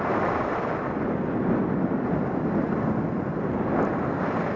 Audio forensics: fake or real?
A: real